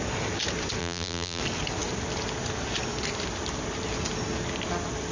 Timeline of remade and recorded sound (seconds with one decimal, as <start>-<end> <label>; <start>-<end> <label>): 0.0-0.8 recorded; 0.8-1.4 remade; 1.4-5.1 recorded